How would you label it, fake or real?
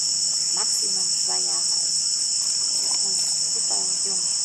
real